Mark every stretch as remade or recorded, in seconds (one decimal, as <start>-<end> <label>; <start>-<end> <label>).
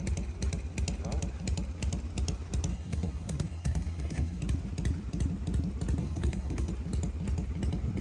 0.0-2.7 recorded; 2.7-4.4 remade; 4.4-6.0 recorded; 6.0-6.7 remade; 6.7-8.0 recorded